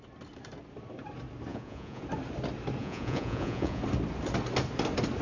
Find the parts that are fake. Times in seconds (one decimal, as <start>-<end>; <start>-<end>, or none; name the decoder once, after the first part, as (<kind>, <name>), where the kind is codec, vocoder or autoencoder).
1.5-2.0 (vocoder, Vocos); 2.8-3.8